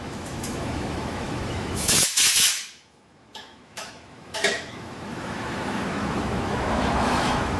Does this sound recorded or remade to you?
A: remade